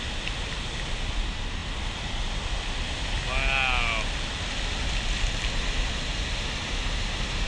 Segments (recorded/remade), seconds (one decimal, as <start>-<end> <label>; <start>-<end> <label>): 0.0-7.5 recorded